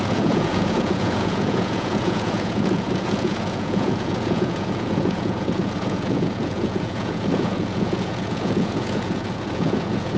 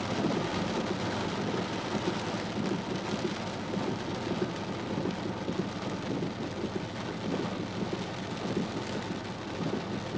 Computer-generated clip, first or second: first